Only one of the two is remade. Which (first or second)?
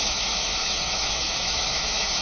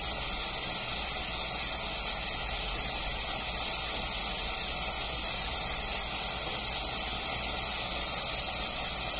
first